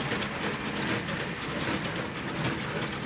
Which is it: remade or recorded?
recorded